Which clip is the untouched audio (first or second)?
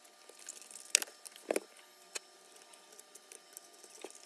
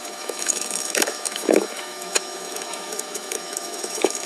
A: first